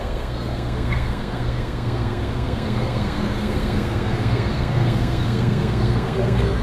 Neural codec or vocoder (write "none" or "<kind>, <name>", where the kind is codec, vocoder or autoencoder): codec, SNAC